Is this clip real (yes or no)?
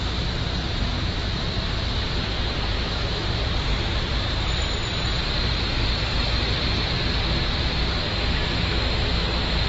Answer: no